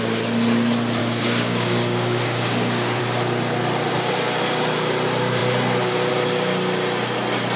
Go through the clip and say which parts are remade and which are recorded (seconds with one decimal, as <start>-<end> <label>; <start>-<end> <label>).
0.0-1.0 recorded; 1.0-3.0 remade; 3.0-7.6 recorded